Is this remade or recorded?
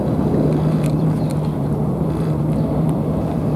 remade